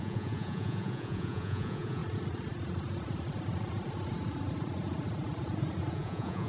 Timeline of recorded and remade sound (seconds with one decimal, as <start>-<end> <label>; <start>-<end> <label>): 0.0-2.0 remade; 2.0-5.9 recorded; 5.9-6.5 remade